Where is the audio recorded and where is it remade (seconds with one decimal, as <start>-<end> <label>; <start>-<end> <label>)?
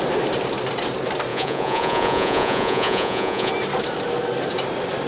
0.0-1.3 recorded; 1.3-3.5 remade; 3.5-5.1 recorded